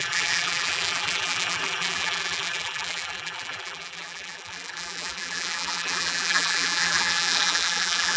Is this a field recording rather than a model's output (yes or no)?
no